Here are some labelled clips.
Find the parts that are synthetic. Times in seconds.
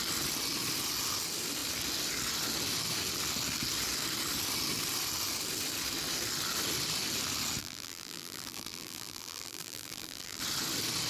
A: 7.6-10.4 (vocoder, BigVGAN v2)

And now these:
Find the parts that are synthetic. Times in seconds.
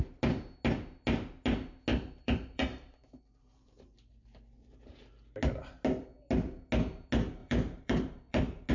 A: 1.9-5.1 (vocoder, BigVGAN v2); 7.4-8.7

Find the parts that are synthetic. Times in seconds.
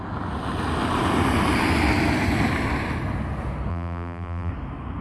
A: 3.7-4.5 (vocoder, BigVGAN v2)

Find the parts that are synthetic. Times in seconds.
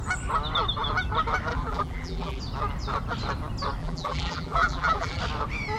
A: 1.5-2.4 (vocoder, BigVGAN v2); 3.8-5.2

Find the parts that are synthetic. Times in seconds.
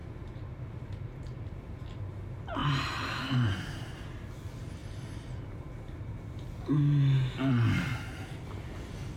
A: 0.0-1.8 (vocoder, BigVGAN v2); 2.6-4.0; 7.9-8.4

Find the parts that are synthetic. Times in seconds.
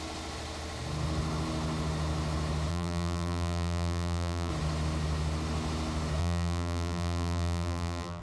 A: 2.7-4.5 (vocoder, BigVGAN v2); 6.2-8.2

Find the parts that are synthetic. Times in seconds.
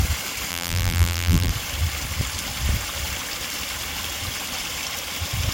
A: 0.5-1.5 (vocoder, BigVGAN v2)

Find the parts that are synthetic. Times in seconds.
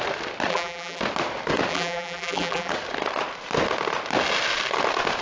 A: 0.5-1.0 (vocoder, BigVGAN v2); 1.7-2.7